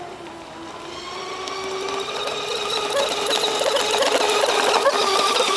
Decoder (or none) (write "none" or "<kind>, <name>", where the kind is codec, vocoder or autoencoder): none